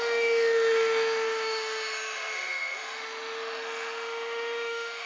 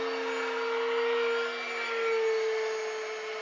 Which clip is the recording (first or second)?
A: second